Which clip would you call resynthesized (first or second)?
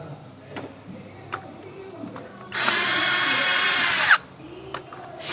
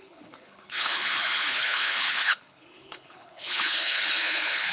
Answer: second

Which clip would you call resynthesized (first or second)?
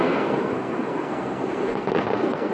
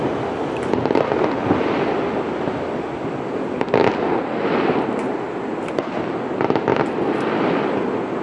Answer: first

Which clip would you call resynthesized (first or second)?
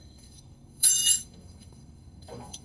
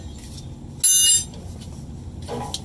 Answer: first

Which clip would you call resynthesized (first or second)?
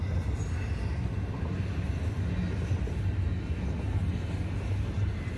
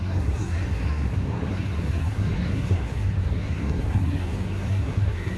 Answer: second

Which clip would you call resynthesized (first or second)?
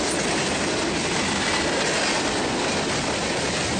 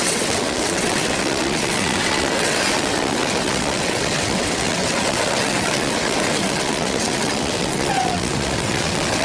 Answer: second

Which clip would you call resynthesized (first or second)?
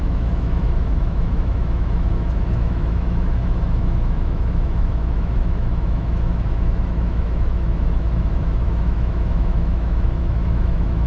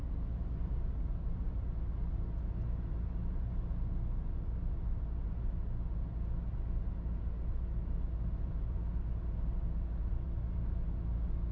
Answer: first